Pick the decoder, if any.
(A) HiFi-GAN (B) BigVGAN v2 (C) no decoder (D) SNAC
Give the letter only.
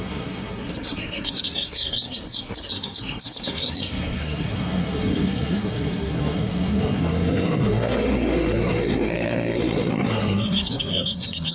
D